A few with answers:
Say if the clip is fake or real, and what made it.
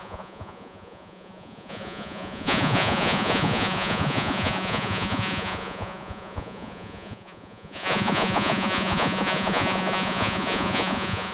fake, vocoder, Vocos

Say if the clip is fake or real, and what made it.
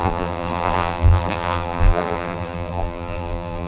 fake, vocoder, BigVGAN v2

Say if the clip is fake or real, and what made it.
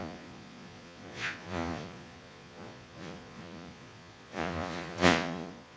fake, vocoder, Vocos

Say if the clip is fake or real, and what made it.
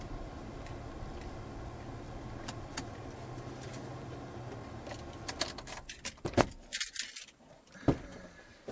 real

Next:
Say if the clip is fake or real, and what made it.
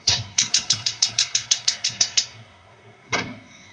fake, codec, SNAC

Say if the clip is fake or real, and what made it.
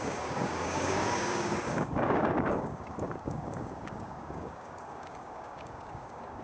fake, codec, DAC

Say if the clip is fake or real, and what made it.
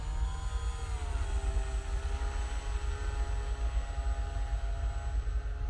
real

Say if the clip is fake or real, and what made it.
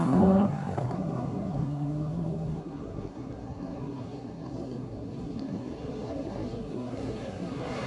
fake, codec, SNAC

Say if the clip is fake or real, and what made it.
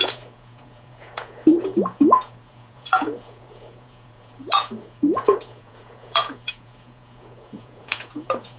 fake, vocoder, Vocos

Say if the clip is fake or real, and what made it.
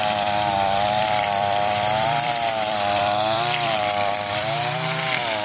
fake, vocoder, BigVGAN v2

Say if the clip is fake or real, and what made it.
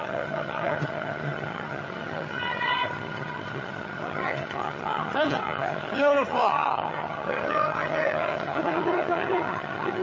fake, vocoder, HiFi-GAN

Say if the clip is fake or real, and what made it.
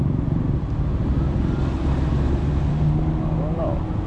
real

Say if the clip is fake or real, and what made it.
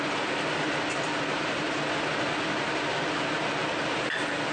real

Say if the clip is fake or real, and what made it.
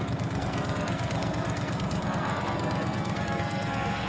fake, codec, SNAC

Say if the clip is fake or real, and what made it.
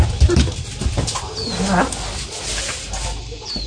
real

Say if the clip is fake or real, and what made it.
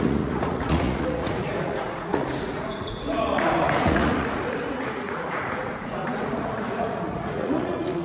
fake, vocoder, Vocos